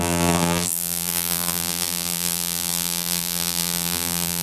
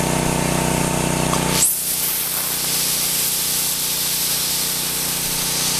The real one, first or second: second